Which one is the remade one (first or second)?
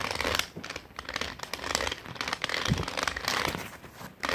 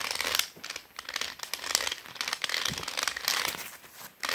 first